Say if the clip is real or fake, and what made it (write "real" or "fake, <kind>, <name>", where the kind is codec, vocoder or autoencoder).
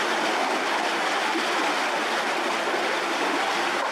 real